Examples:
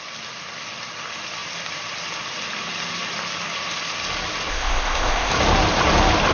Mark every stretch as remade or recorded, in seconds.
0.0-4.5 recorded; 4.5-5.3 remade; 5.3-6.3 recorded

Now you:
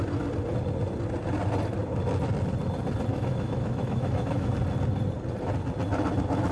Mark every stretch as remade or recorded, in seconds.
0.0-3.1 recorded; 3.1-4.5 remade; 4.5-6.5 recorded

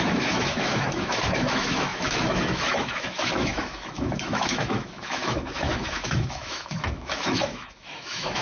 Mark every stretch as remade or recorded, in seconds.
0.0-8.4 remade

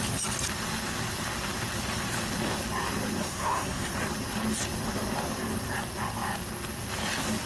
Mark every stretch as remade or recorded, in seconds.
0.0-3.2 recorded; 3.2-3.9 remade; 3.9-7.5 recorded

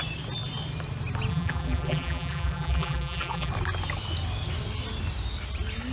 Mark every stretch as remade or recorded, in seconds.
0.0-1.3 recorded; 1.3-3.5 remade; 3.5-5.9 recorded

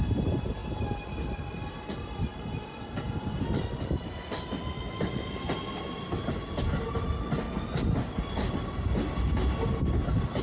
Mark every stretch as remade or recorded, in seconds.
0.0-10.4 recorded

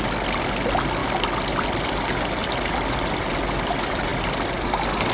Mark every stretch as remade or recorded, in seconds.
0.0-5.1 recorded

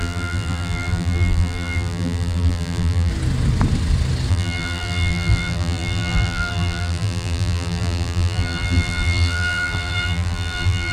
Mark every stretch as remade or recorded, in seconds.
0.0-3.1 remade; 3.1-4.3 recorded; 4.3-10.9 remade